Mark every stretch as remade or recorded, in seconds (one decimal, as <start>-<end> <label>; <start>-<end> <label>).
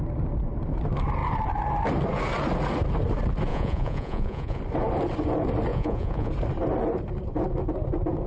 0.0-3.5 recorded; 3.5-4.6 remade; 4.6-5.7 recorded; 5.7-6.3 remade; 6.3-8.3 recorded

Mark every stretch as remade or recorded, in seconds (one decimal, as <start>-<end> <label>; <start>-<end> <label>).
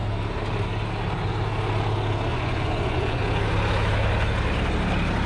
0.0-2.3 recorded; 2.3-3.2 remade; 3.2-5.3 recorded